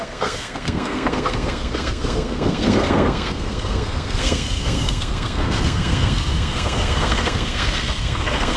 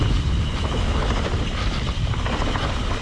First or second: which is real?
second